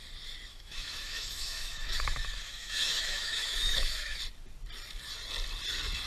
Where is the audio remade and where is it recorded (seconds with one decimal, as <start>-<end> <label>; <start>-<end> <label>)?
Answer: 0.0-0.5 recorded; 0.5-4.2 remade; 4.2-6.1 recorded